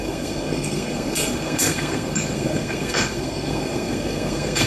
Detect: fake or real fake